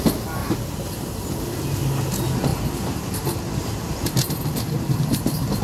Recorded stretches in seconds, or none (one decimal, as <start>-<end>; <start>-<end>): 0.0-0.4; 1.3-2.5